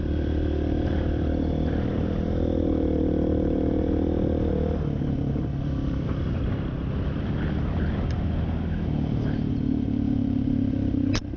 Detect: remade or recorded recorded